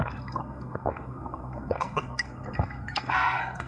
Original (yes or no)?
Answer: no